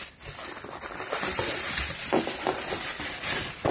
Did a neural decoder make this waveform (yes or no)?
no